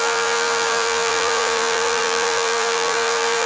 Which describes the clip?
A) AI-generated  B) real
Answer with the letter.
A